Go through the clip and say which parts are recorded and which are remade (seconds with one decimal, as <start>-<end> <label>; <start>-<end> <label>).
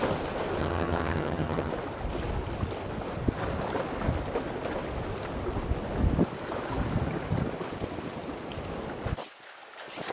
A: 0.0-0.6 recorded; 0.6-1.7 remade; 1.7-10.1 recorded